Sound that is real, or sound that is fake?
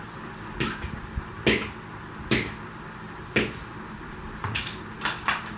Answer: real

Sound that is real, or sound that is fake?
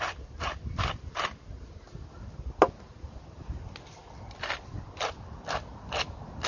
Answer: real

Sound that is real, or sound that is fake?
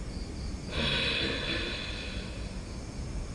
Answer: real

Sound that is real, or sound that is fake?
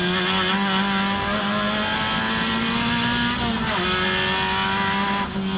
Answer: real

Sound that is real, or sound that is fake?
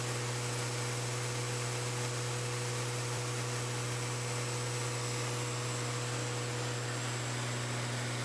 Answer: real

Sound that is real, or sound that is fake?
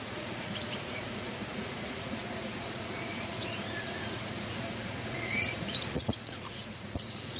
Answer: fake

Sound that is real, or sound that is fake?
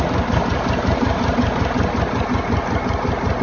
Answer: real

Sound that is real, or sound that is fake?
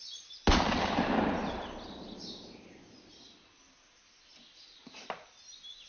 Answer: real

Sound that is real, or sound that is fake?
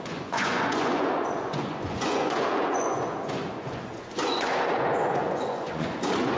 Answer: fake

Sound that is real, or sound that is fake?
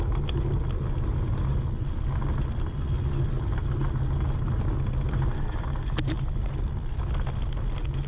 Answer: real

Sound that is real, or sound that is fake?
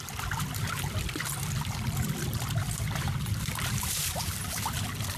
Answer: real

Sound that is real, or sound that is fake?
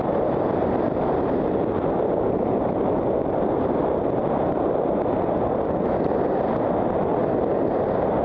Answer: real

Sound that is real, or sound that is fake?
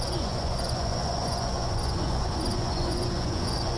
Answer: fake